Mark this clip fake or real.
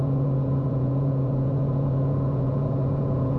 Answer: fake